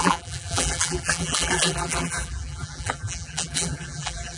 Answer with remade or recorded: remade